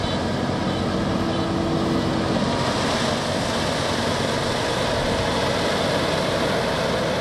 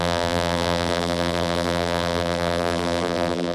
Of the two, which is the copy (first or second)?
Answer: second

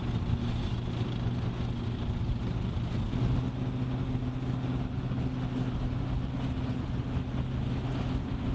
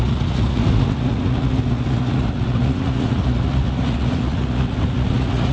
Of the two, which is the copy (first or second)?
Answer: second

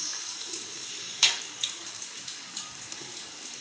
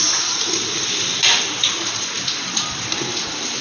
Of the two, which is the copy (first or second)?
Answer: first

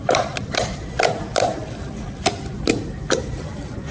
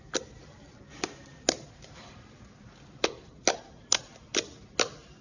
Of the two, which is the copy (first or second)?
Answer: first